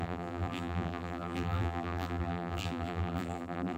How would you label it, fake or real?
fake